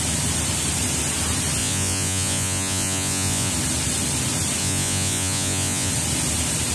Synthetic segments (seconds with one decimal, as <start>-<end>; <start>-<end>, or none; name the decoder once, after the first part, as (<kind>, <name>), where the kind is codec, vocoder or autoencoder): 1.6-3.5 (vocoder, Vocos); 4.6-5.9